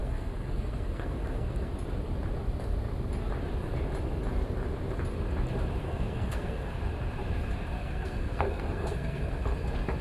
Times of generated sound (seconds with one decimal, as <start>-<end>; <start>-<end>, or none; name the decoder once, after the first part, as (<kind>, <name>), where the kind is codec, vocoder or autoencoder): 0.0-1.7 (codec, SNAC); 5.8-6.8; 7.8-9.4